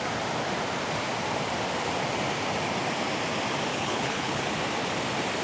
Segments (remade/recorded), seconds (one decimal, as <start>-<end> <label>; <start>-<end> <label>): 0.0-3.7 recorded; 3.7-4.4 remade; 4.4-5.4 recorded